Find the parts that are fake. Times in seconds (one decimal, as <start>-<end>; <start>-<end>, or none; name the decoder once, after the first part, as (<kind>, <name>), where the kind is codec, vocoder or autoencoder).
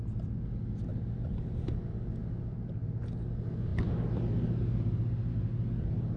none